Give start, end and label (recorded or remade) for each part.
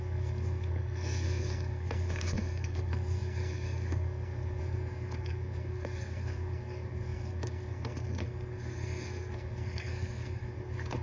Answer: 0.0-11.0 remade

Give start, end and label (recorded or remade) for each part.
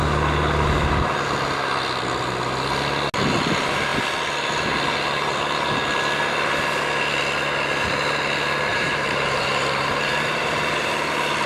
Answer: 0.0-8.7 recorded; 8.7-10.9 remade; 10.9-11.5 recorded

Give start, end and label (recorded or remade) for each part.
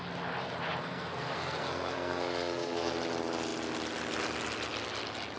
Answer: 0.0-0.8 recorded; 0.8-2.9 remade; 2.9-5.4 recorded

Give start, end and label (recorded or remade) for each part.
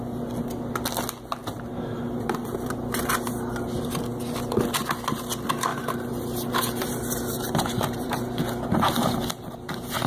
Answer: 0.0-1.4 recorded; 1.4-3.3 remade; 3.3-5.7 recorded; 5.7-8.4 remade; 8.4-10.1 recorded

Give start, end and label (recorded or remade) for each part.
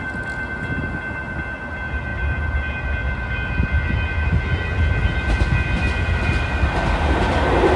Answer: 0.0-7.8 recorded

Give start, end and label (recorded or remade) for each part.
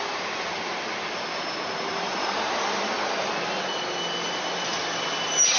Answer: 0.0-1.9 recorded; 1.9-3.3 remade; 3.3-5.6 recorded